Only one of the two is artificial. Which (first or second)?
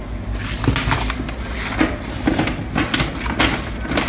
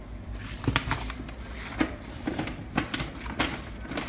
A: second